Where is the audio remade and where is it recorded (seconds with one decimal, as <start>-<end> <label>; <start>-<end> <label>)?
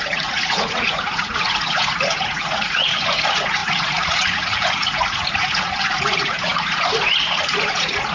0.0-8.1 remade